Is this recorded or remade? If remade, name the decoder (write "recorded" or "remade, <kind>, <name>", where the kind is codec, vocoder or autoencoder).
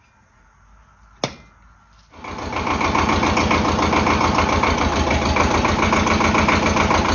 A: recorded